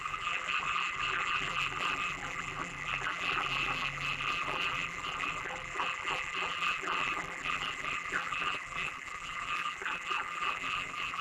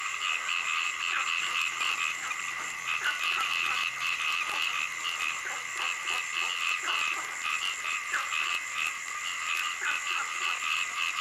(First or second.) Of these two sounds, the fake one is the first